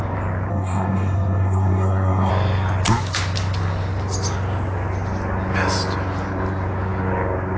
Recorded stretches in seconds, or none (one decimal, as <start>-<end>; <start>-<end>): 0.0-0.5; 2.3-7.6